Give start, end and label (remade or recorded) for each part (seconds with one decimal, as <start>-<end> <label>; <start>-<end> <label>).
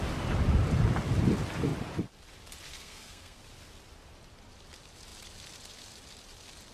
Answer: 0.0-2.7 recorded; 2.7-3.4 remade; 3.4-6.7 recorded